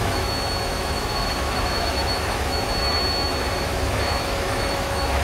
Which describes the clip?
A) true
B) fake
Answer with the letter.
B